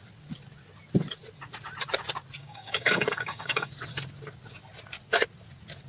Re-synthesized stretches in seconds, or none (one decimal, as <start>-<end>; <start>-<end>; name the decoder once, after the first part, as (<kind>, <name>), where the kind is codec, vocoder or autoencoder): 2.4-3.7 (codec, DAC)

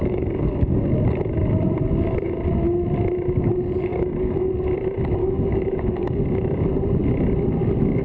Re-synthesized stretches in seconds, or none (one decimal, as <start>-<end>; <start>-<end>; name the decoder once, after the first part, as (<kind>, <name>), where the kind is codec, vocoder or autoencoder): 0.0-0.8 (codec, DAC); 3.9-4.5; 5.2-6.2

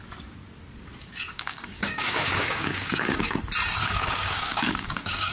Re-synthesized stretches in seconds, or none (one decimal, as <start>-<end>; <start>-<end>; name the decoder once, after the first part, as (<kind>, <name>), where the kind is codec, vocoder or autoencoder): 1.0-3.4 (codec, DAC); 3.8-5.3

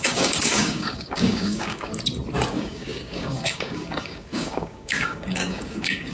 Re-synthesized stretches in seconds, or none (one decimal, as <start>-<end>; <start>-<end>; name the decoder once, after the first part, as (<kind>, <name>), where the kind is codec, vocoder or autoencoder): 0.0-1.9 (codec, DAC); 2.5-6.1

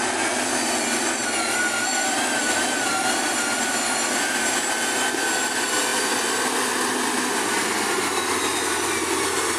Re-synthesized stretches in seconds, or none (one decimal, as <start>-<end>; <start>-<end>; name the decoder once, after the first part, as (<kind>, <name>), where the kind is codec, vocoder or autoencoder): none

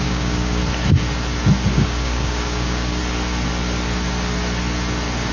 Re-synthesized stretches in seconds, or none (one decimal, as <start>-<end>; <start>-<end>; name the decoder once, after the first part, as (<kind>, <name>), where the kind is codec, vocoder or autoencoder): 0.0-0.6 (codec, DAC); 1.7-3.0

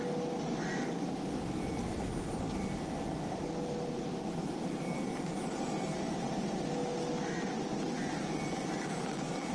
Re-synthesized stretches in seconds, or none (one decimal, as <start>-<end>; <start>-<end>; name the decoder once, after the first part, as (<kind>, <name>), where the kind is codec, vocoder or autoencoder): none